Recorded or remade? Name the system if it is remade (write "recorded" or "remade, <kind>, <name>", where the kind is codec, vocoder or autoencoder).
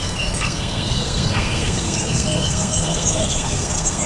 remade, codec, SNAC